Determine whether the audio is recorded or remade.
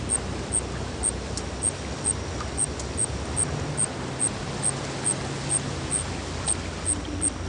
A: recorded